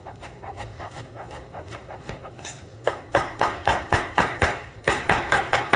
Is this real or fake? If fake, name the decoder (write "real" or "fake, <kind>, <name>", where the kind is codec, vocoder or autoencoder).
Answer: fake, codec, SNAC